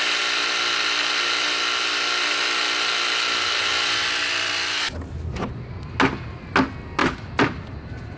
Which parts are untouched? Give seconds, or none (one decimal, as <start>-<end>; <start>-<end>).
0.0-8.2